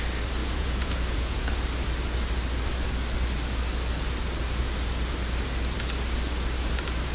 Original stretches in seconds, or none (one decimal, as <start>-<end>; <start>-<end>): 0.0-0.4; 1.5-7.1